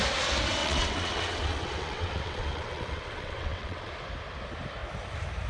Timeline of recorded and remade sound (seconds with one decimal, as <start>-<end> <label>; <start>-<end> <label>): 0.0-0.6 recorded; 0.6-3.9 remade; 3.9-5.5 recorded